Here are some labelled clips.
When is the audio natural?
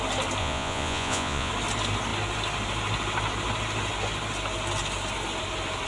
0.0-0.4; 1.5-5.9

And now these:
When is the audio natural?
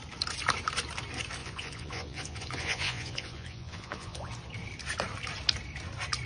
0.0-1.4; 4.3-6.3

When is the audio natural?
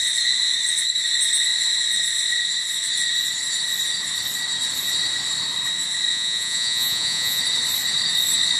0.0-6.1; 7.4-8.6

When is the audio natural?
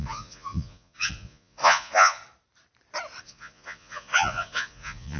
2.2-3.2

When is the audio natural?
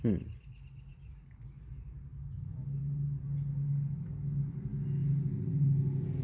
0.0-6.2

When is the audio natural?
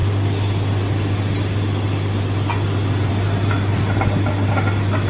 0.0-5.1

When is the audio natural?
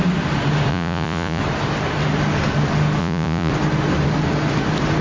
0.0-0.7; 1.4-3.0; 3.5-5.0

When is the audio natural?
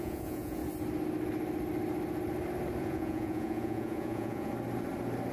0.6-2.8; 4.5-5.3